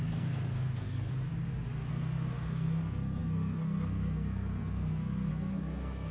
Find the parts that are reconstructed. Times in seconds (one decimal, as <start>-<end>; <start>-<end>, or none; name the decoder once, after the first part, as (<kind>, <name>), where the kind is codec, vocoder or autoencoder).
0.0-1.3 (codec, SNAC); 1.9-6.1